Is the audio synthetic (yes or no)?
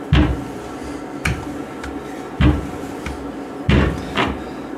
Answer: no